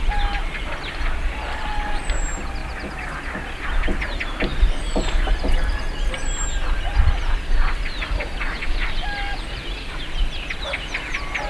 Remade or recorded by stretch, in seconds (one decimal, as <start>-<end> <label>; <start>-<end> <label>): 0.0-11.5 recorded